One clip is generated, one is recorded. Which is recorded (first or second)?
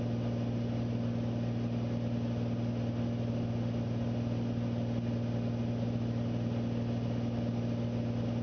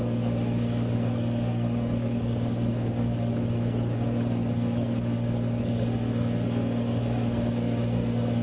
first